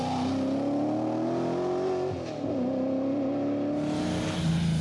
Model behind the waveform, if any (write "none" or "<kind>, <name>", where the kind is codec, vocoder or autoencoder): none